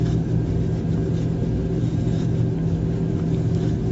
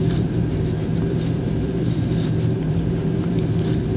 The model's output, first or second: second